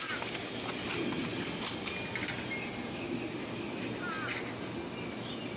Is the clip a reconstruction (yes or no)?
no